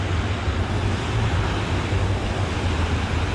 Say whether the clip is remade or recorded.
recorded